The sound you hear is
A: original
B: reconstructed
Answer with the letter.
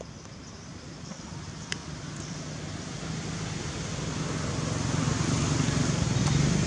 A